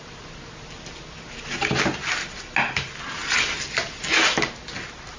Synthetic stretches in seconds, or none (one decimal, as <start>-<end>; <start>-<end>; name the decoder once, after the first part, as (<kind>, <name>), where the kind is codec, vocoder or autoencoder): none